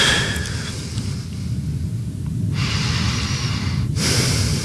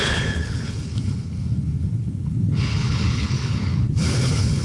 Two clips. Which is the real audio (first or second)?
first